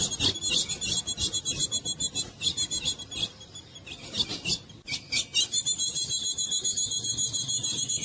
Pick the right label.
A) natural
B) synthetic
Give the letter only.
A